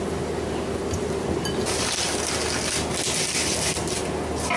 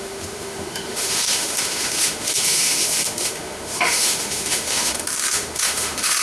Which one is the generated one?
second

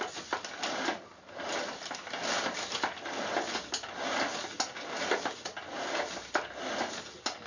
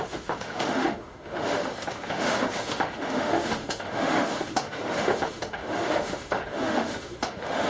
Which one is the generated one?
second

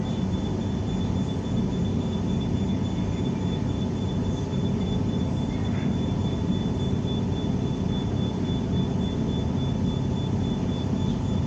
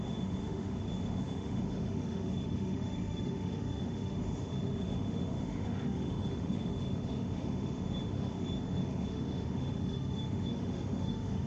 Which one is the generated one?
second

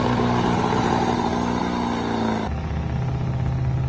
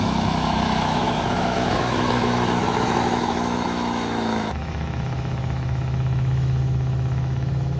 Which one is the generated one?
second